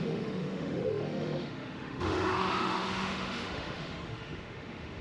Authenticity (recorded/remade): remade